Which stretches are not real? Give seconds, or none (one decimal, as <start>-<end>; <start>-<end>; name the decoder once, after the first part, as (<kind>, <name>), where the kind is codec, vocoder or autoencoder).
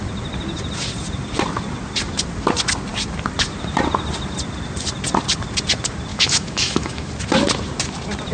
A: 6.1-7.1 (autoencoder, DAC-VAE)